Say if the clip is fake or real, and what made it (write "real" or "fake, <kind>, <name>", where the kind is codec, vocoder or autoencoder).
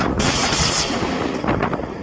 fake, vocoder, Vocos